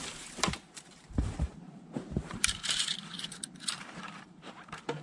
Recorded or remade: remade